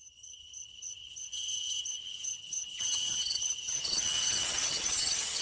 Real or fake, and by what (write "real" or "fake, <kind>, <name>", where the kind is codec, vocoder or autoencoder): fake, vocoder, HiFi-GAN